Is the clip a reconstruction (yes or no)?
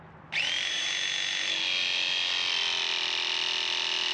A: no